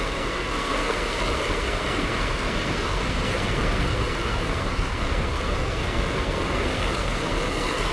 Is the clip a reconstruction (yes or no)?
yes